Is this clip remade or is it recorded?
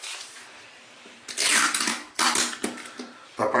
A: remade